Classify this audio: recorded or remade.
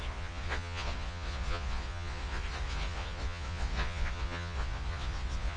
remade